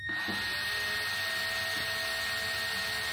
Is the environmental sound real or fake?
real